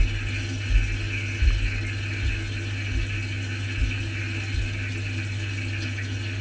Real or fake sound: real